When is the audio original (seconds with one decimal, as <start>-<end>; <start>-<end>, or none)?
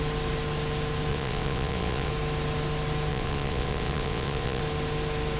0.0-1.1; 2.1-3.1; 4.6-5.4